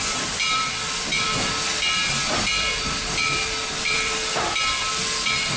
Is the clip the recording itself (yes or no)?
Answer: no